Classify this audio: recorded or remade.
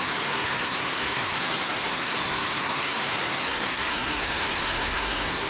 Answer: remade